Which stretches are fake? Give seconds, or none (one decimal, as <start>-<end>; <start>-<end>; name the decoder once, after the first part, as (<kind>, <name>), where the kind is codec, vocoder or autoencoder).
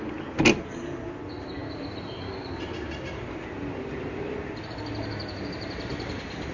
none